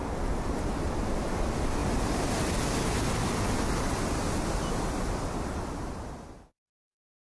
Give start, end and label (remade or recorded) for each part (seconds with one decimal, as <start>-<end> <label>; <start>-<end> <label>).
0.0-7.2 recorded